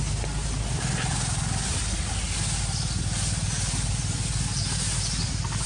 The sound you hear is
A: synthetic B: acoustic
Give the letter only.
B